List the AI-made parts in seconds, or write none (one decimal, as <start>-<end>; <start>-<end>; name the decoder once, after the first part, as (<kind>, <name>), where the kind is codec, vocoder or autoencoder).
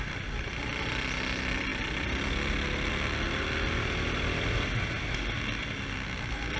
none